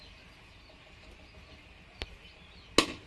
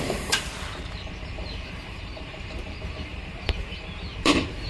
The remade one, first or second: second